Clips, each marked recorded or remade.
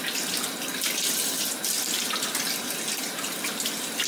recorded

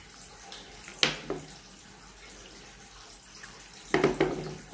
recorded